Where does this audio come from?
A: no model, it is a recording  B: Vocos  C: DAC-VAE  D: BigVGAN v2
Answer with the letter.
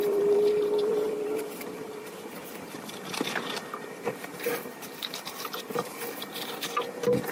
D